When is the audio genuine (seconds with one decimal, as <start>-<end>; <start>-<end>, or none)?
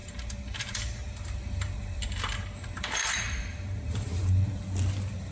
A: 4.1-5.3